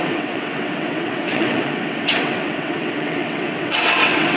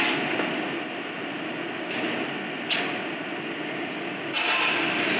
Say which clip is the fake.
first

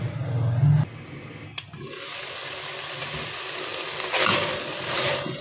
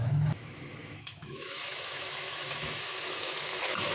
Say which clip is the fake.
second